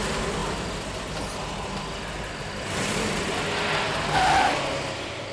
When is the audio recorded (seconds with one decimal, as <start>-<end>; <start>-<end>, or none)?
0.0-5.3